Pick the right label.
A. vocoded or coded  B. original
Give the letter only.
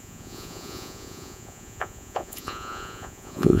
A